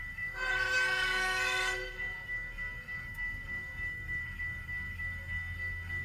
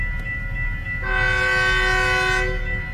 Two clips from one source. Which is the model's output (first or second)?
first